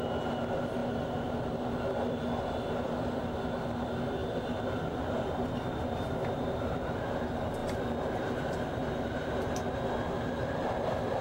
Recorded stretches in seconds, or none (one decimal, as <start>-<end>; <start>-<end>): 0.0-11.2